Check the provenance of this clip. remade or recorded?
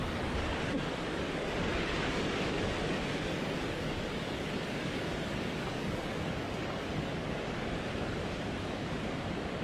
remade